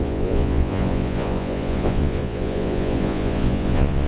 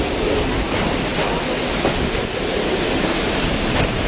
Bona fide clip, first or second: second